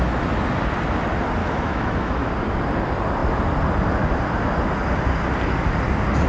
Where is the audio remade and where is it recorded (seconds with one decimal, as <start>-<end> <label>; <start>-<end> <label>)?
0.0-1.4 recorded; 1.4-2.3 remade; 2.3-6.3 recorded